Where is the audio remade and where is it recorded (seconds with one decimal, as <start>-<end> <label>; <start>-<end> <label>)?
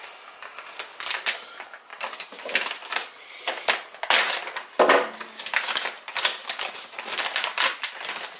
0.0-8.4 recorded